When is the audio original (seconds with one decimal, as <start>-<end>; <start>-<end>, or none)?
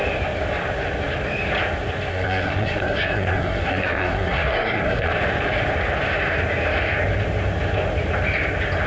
0.0-2.1; 5.1-8.9